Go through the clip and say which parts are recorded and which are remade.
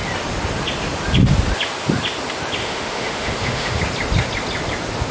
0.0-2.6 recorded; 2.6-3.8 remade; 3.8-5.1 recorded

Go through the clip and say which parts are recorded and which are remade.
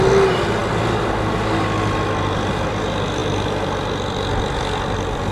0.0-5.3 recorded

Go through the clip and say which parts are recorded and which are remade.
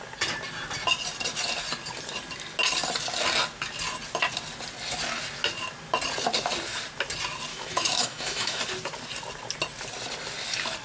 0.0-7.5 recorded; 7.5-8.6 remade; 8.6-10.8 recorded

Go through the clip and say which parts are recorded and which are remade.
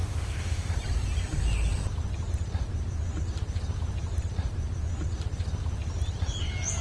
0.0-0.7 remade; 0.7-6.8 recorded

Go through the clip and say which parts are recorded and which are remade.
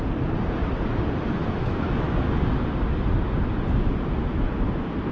0.0-1.4 recorded; 1.4-2.3 remade; 2.3-5.1 recorded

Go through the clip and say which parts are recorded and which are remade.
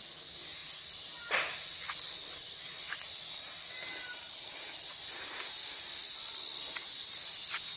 0.0-7.8 recorded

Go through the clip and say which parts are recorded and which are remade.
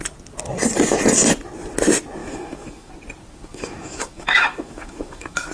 0.0-2.2 recorded; 2.2-2.9 remade; 2.9-3.5 recorded; 3.5-5.5 remade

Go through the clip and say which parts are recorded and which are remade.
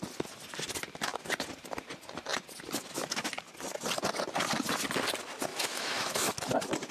0.0-5.5 recorded; 5.5-6.3 remade; 6.3-6.9 recorded